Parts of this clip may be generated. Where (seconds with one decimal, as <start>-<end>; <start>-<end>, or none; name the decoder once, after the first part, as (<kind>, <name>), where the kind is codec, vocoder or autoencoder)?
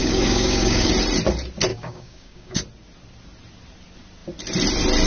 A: 0.0-0.9 (codec, DAC); 1.7-2.6